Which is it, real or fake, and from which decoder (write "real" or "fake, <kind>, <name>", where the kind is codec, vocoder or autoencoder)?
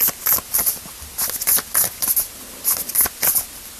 real